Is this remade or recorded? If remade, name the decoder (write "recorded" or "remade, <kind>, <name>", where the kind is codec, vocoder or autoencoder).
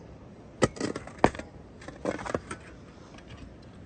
recorded